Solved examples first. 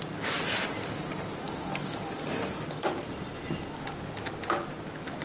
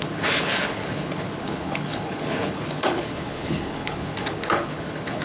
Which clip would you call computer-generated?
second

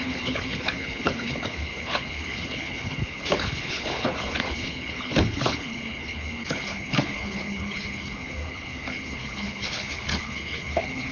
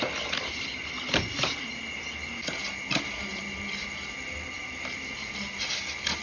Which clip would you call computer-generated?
first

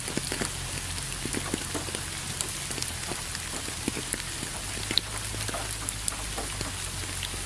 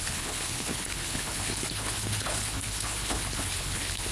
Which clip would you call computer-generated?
second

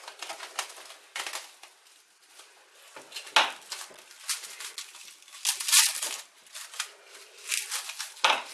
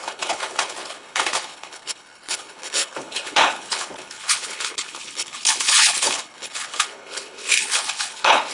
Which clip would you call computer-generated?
second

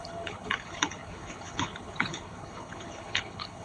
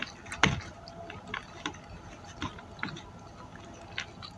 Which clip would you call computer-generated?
first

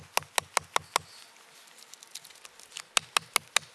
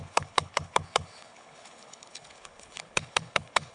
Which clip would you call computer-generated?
second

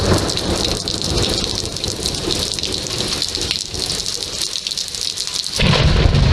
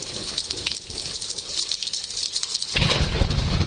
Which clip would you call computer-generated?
second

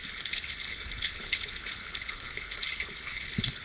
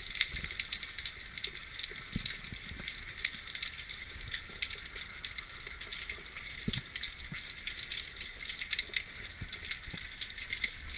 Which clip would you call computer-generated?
first